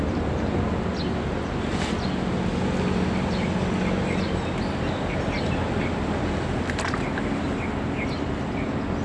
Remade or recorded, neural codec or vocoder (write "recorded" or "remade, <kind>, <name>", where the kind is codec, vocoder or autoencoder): recorded